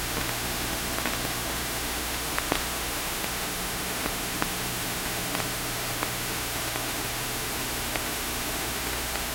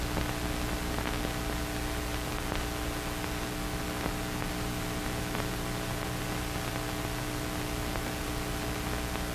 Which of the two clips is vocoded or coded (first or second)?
first